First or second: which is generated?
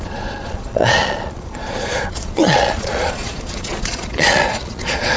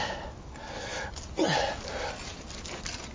first